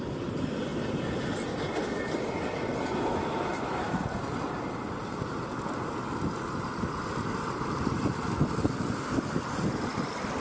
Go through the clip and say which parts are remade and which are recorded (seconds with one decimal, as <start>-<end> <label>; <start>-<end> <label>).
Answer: 0.0-3.1 recorded; 3.1-4.0 remade; 4.0-10.4 recorded